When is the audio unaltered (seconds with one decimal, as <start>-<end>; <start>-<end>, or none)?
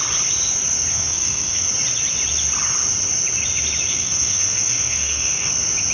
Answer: 0.0-0.9; 1.7-3.9; 5.5-5.9